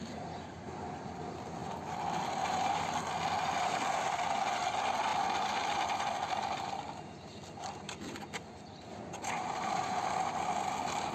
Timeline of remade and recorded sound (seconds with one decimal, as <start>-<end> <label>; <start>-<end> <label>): 0.0-8.9 recorded; 8.9-10.1 remade; 10.1-11.1 recorded